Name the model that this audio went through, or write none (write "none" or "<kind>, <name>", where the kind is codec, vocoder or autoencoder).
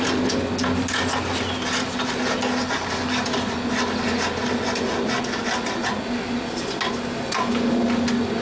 none